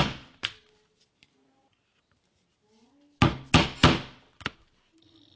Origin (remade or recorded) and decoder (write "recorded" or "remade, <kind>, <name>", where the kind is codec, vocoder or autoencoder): recorded